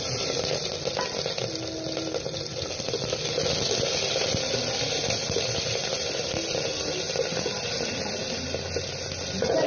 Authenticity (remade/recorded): recorded